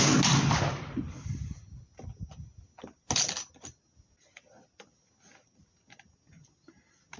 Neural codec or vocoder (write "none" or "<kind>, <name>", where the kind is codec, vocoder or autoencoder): none